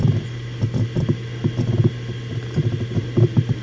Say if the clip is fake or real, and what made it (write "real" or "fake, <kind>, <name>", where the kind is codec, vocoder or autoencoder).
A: real